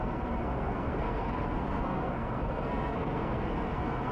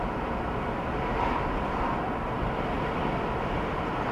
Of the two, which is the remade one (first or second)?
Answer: first